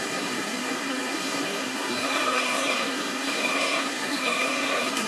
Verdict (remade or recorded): remade